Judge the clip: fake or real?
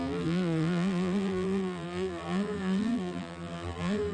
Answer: fake